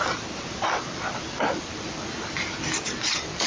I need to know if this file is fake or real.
real